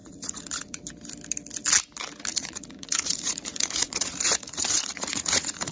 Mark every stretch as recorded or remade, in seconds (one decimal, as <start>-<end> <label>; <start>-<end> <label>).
0.0-0.8 remade; 0.8-2.3 recorded; 2.3-5.7 remade